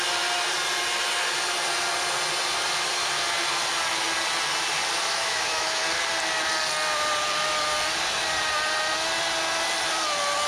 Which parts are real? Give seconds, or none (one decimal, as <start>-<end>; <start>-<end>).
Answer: 0.0-5.2; 5.8-10.5